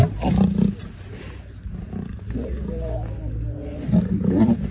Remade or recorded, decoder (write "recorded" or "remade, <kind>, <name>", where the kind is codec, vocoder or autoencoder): recorded